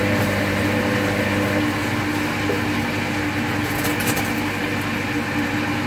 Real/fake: real